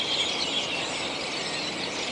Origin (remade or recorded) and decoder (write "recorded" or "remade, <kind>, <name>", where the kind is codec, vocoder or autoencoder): recorded